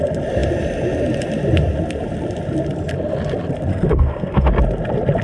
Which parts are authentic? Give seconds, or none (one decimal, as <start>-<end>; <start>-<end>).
0.0-3.7; 4.5-5.2